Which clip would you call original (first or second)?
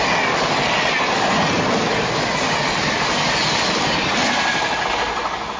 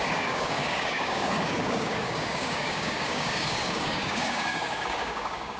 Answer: first